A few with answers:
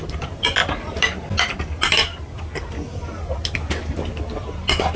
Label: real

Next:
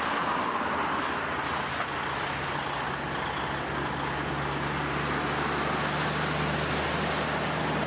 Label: real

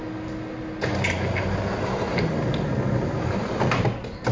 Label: real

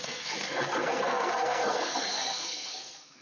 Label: fake